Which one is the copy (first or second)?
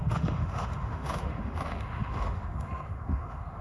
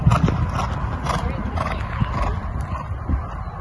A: first